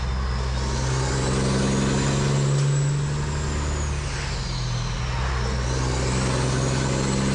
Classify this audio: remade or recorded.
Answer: recorded